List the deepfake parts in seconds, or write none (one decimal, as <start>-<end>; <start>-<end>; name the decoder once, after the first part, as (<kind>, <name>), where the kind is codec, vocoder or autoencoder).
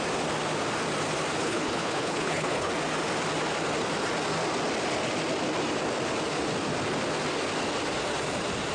1.4-2.7 (codec, HILCodec)